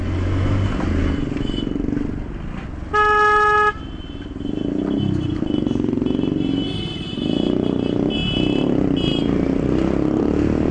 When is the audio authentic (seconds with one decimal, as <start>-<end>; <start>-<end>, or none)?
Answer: 0.0-10.7